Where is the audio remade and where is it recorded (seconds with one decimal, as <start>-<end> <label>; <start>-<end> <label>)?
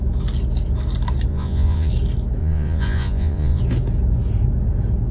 0.0-1.3 recorded; 1.3-1.9 remade; 1.9-2.4 recorded; 2.4-3.6 remade; 3.6-5.1 recorded